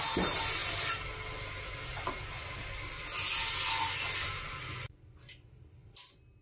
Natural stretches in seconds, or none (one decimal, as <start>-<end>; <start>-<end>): 0.0-6.4